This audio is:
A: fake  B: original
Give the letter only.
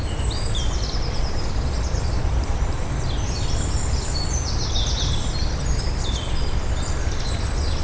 B